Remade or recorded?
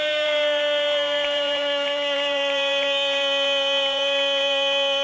remade